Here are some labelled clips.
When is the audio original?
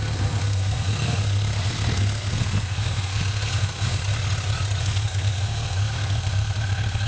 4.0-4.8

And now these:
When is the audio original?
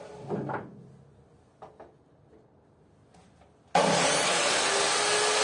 0.0-5.4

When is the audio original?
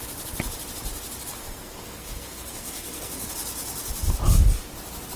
0.0-1.4; 3.3-5.2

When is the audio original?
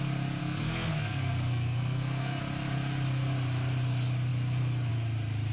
0.0-0.4; 2.4-5.5